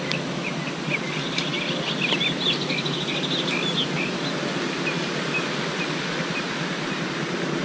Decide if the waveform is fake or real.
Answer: real